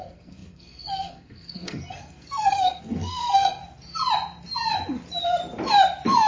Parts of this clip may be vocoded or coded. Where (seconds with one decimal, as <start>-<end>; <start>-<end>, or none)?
0.0-3.6